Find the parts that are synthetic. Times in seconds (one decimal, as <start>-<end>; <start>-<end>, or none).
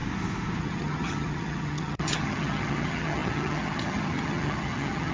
0.6-5.1